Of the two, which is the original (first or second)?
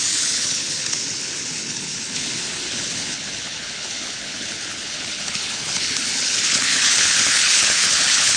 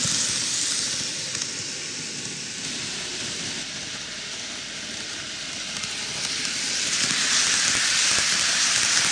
second